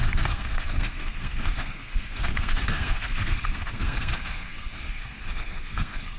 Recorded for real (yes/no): no